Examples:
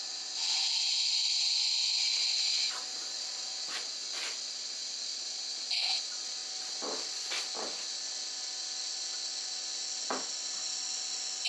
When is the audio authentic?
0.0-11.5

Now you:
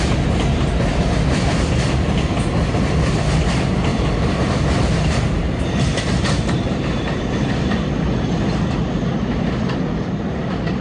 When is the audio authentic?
0.0-3.9; 7.5-10.8